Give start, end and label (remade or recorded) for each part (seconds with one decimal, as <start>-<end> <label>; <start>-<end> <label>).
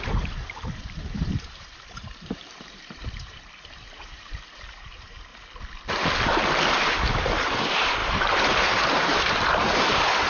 0.0-5.3 remade; 5.3-6.8 recorded; 6.8-10.3 remade